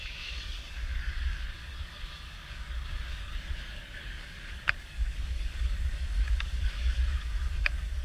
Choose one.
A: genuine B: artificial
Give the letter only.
B